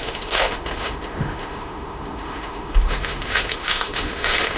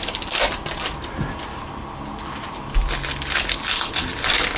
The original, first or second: second